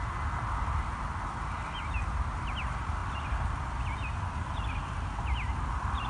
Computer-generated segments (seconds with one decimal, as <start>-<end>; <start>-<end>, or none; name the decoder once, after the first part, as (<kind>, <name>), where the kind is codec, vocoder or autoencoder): none